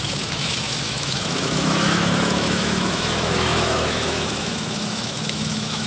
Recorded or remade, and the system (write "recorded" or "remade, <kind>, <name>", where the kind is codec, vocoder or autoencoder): remade, autoencoder, DAC-VAE